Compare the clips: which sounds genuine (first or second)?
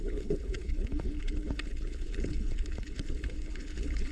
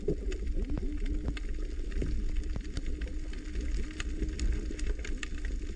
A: second